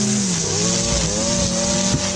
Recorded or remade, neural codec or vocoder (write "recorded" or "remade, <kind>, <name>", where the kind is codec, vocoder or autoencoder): recorded